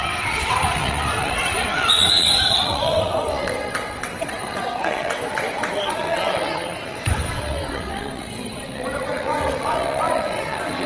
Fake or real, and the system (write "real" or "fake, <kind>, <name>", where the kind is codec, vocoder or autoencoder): fake, vocoder, WaveNeXt